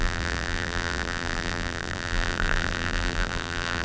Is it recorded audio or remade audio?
remade